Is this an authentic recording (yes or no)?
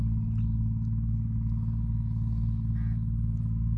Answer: yes